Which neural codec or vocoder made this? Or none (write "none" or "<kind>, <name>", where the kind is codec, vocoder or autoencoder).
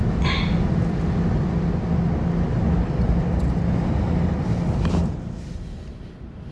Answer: none